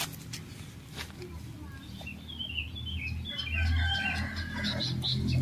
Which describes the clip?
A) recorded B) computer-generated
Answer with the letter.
A